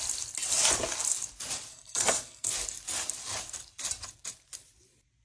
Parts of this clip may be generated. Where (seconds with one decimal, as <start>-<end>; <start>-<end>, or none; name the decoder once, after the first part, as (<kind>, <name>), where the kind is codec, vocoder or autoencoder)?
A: 1.7-2.5 (codec, SNAC)